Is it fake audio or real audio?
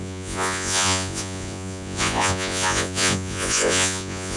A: fake